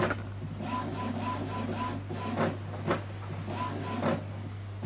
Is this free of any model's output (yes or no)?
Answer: yes